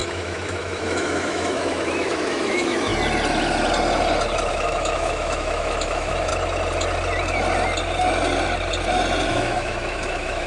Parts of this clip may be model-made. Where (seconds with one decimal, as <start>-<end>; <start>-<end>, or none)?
0.0-2.9; 4.5-6.3; 9.3-10.5